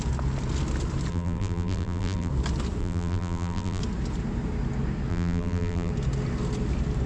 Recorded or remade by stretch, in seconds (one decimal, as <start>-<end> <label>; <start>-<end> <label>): 0.0-1.1 recorded; 1.1-2.3 remade; 2.3-2.8 recorded; 2.8-3.8 remade; 3.8-5.1 recorded; 5.1-5.9 remade; 5.9-7.1 recorded